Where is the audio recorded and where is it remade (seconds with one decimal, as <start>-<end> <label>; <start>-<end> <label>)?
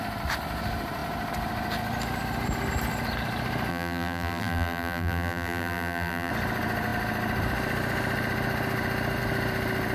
0.0-3.7 recorded; 3.7-6.3 remade; 6.3-9.9 recorded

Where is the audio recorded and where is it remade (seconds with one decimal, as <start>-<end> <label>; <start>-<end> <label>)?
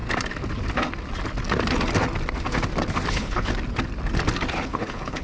0.0-3.1 recorded; 3.1-3.5 remade; 3.5-4.5 recorded; 4.5-5.2 remade